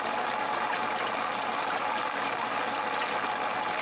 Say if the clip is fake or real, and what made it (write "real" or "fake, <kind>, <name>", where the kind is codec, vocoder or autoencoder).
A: real